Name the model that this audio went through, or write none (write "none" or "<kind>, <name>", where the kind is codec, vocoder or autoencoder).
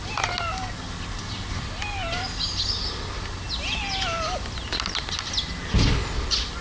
none